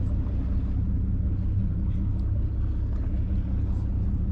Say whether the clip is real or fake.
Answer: real